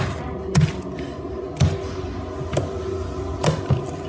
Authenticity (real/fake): real